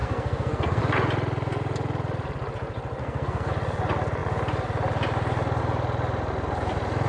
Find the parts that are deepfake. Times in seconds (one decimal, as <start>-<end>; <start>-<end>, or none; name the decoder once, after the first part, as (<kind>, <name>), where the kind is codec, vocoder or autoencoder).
0.0-0.8 (codec, SNAC); 3.0-3.5